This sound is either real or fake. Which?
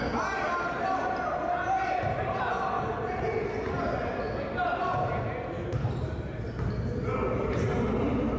real